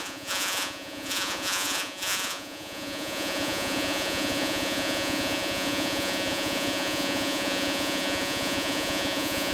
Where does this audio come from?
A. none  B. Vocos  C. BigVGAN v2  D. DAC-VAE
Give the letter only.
B